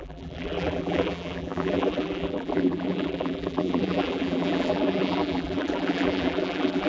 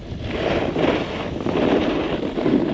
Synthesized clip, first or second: first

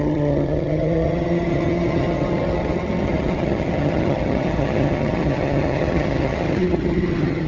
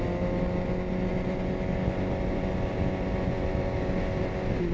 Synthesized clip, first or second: first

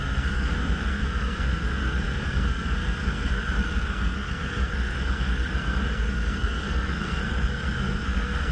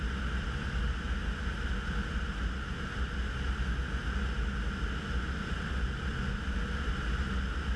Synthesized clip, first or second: first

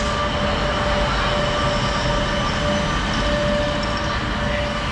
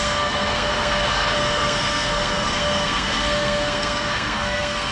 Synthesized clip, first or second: second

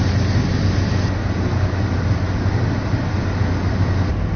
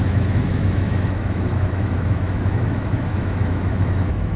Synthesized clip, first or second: second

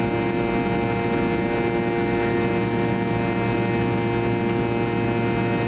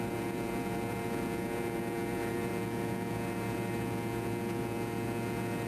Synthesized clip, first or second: second